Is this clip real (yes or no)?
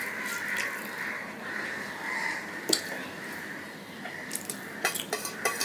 no